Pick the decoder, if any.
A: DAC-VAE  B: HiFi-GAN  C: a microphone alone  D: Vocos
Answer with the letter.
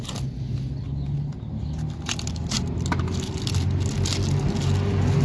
C